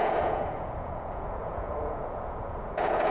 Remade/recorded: remade